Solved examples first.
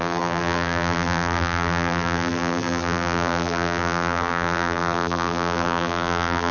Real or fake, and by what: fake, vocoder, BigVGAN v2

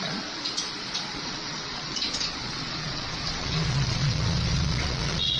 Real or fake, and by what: fake, vocoder, Vocos